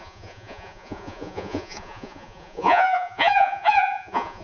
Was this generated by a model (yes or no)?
yes